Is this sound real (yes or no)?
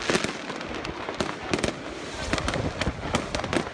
yes